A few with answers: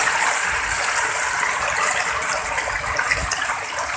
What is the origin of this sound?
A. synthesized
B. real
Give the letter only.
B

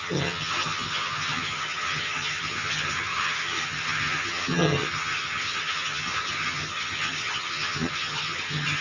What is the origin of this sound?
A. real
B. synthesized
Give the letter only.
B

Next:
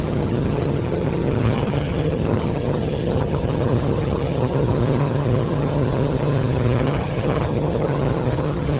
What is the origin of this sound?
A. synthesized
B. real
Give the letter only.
A